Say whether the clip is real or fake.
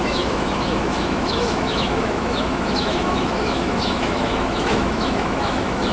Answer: fake